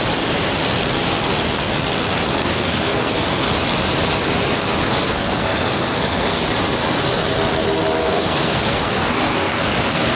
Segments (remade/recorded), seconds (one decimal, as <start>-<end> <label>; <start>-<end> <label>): 0.0-2.3 recorded; 2.3-3.5 remade; 3.5-4.9 recorded; 4.9-6.4 remade; 6.4-8.0 recorded; 8.0-10.2 remade